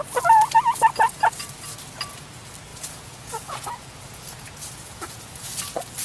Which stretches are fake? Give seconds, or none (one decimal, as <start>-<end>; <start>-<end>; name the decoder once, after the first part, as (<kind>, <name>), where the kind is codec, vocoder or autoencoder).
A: 2.7-5.5 (vocoder, Vocos)